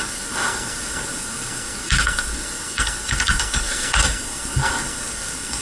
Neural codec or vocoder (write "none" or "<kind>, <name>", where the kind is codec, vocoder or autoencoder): codec, SNAC